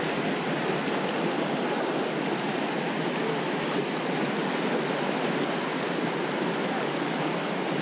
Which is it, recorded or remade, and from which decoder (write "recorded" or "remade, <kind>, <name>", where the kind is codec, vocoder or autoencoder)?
recorded